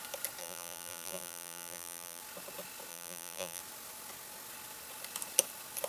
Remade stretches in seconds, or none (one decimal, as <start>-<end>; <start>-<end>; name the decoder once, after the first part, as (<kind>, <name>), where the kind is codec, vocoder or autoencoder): 0.4-2.2 (vocoder, BigVGAN v2); 2.9-3.6